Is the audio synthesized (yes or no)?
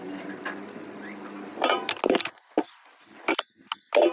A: no